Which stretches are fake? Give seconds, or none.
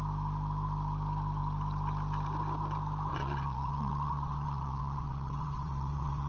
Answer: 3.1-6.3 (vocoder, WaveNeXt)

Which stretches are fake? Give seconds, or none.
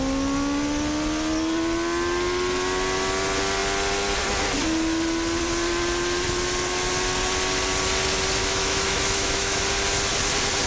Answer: 8.4-9.6 (autoencoder, DAC-VAE)